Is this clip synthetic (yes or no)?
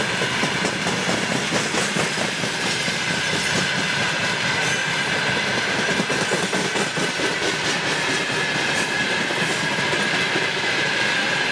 no